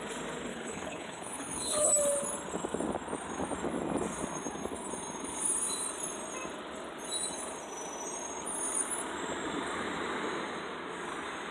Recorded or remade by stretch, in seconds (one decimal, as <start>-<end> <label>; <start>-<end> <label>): 0.0-0.5 recorded; 0.5-1.9 remade; 1.9-11.5 recorded